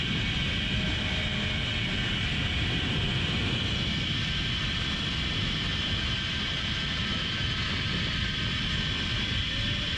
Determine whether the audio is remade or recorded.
recorded